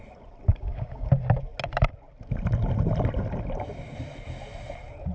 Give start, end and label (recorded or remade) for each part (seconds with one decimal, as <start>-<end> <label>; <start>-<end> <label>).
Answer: 0.0-0.5 recorded; 0.5-1.1 remade; 1.1-5.1 recorded